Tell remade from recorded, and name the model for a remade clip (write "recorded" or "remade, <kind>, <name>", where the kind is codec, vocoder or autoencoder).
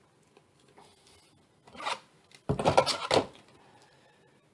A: recorded